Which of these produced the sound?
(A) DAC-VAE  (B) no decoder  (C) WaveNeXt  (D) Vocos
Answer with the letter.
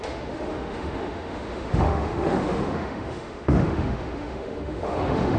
A